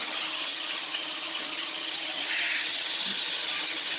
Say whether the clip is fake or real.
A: fake